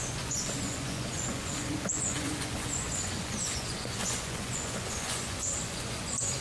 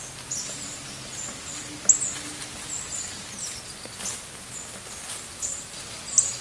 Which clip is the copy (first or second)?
first